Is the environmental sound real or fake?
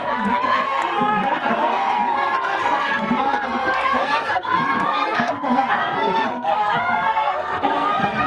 fake